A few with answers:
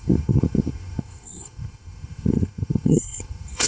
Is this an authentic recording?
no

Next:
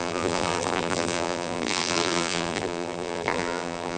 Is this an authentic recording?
no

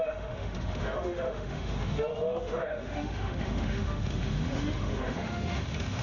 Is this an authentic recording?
no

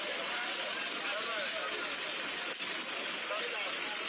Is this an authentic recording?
yes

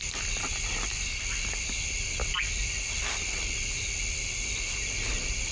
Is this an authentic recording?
yes